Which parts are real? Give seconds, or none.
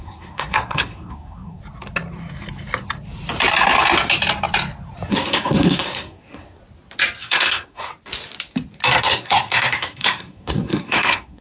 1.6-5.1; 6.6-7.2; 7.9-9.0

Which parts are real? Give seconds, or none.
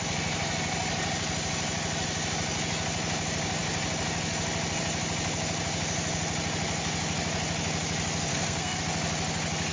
0.0-8.3; 8.8-9.7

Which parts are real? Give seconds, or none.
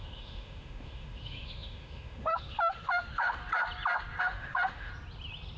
3.4-4.2; 4.9-5.6